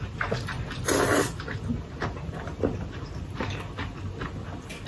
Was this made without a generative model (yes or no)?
yes